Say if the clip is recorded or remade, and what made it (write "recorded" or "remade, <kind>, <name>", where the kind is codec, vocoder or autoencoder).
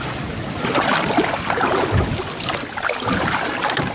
recorded